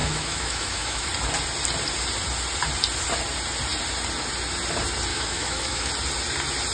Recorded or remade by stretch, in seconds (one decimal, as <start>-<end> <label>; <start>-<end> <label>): 0.0-1.1 remade; 1.1-5.1 recorded; 5.1-5.9 remade; 5.9-6.7 recorded